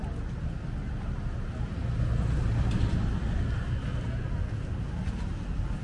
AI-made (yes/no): no